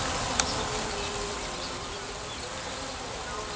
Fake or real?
real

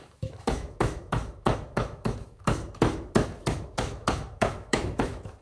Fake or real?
fake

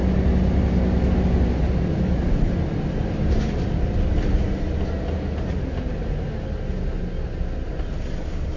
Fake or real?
real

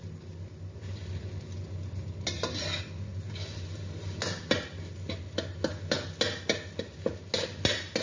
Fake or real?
real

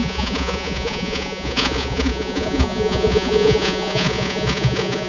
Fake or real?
fake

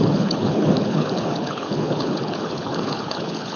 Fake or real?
fake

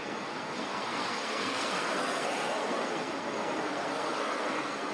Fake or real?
fake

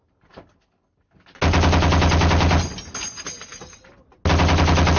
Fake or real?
real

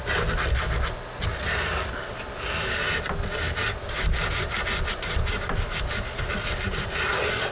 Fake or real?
real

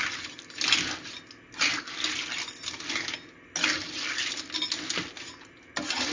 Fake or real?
real